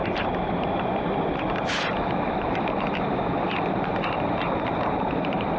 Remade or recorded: recorded